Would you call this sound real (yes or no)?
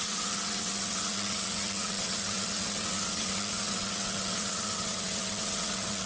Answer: no